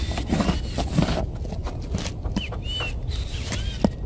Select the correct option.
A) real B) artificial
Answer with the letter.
A